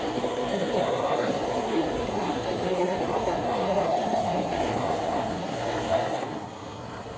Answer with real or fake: fake